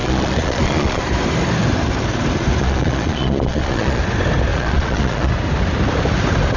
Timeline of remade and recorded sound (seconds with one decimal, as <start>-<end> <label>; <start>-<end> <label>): 0.0-1.0 remade; 1.0-2.6 recorded; 2.6-4.0 remade; 4.0-4.5 recorded; 4.5-5.3 remade; 5.3-6.6 recorded

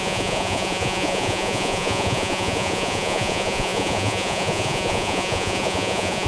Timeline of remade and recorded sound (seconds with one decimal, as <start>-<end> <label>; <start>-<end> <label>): 0.0-6.3 remade

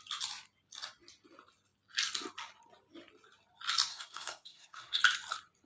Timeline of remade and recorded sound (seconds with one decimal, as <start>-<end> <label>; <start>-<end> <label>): 0.0-3.9 recorded; 3.9-5.0 remade; 5.0-5.7 recorded

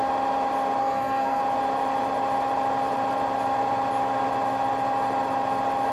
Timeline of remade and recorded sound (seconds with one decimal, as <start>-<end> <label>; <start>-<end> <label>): 0.0-0.8 recorded; 0.8-1.4 remade; 1.4-5.9 recorded

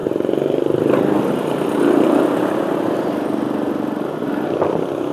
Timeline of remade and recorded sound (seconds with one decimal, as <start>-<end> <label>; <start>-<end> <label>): 0.0-3.1 remade; 3.1-5.1 recorded